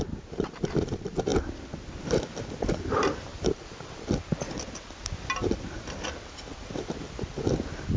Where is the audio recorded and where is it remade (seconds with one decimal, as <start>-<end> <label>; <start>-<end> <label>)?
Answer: 0.0-8.0 recorded